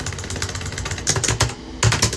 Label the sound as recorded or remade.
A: recorded